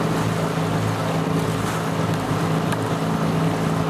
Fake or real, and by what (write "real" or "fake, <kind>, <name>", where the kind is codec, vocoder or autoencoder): real